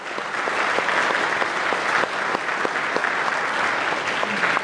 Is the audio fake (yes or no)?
no